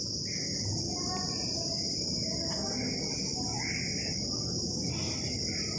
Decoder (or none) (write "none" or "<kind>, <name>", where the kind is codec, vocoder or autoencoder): none